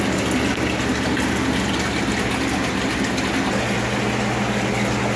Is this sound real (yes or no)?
yes